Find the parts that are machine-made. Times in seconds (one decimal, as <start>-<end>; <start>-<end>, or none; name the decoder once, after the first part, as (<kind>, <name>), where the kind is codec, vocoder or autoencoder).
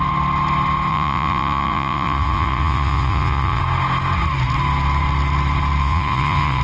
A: 0.9-3.6 (vocoder, Vocos); 5.8-6.6